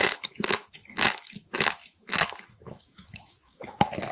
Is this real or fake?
fake